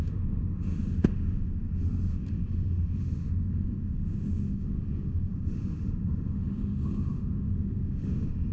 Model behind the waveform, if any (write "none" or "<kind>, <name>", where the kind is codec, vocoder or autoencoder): autoencoder, DAC-VAE